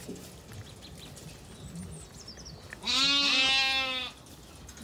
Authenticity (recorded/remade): recorded